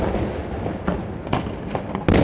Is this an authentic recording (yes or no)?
yes